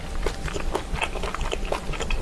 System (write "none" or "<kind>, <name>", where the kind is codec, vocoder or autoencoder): none